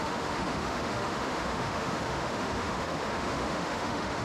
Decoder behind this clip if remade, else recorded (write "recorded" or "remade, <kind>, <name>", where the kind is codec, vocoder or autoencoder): remade, autoencoder, DAC-VAE